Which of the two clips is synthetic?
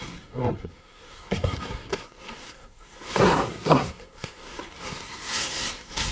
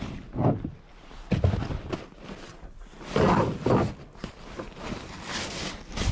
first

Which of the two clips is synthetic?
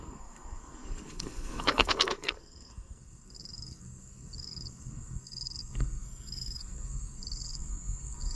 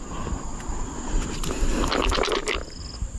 first